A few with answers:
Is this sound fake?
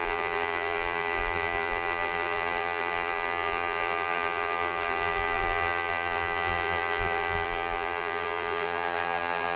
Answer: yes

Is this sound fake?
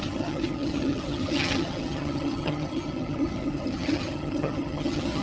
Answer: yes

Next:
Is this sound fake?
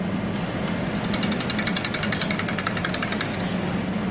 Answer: no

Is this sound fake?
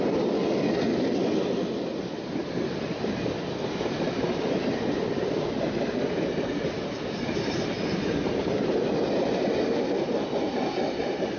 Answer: no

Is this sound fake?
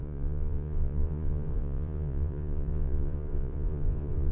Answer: yes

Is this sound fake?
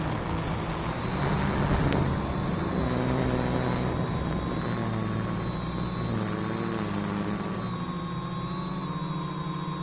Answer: no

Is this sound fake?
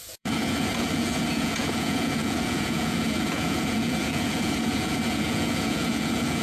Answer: yes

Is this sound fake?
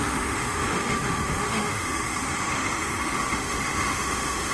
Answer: yes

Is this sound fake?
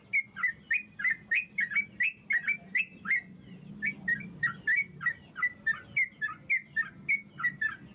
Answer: no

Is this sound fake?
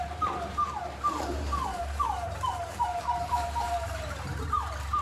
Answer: yes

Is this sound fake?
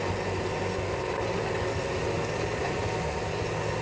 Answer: no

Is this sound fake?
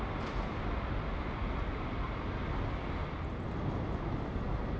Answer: no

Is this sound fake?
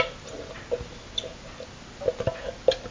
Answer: no